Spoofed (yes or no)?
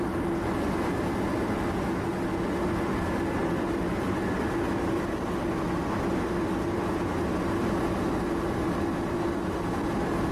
no